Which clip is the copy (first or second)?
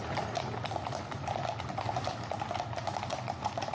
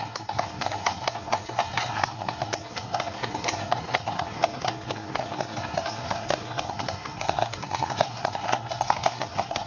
second